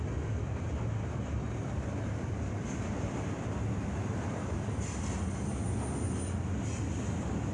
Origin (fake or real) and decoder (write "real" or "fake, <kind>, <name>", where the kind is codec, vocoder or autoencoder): real